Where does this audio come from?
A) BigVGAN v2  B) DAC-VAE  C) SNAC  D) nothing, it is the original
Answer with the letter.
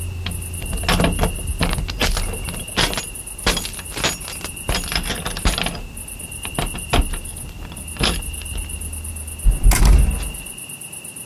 D